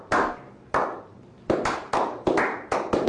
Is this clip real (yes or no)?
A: yes